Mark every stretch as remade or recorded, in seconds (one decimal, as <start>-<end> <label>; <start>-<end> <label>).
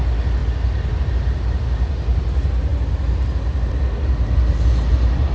0.0-5.3 recorded